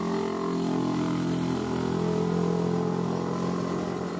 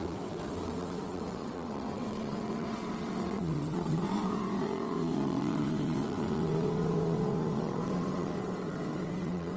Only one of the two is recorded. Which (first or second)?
first